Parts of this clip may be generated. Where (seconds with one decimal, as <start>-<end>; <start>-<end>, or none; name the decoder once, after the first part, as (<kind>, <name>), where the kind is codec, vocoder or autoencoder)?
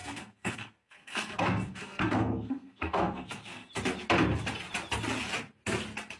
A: 0.0-3.7 (codec, SNAC)